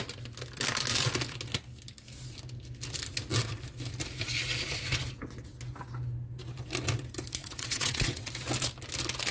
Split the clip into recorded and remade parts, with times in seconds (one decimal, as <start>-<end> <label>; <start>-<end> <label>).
0.0-7.4 recorded; 7.4-8.3 remade; 8.3-9.3 recorded